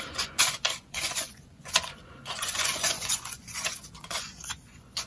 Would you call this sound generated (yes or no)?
yes